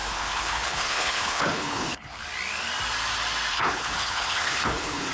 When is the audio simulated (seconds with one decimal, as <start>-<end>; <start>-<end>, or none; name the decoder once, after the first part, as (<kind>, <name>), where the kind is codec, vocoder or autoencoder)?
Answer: 0.0-2.2 (codec, HILCodec); 3.5-5.1